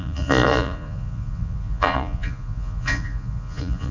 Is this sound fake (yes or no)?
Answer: yes